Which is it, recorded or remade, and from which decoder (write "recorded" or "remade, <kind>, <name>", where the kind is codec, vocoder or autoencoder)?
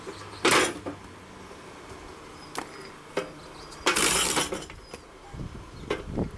recorded